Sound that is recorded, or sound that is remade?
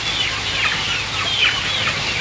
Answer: recorded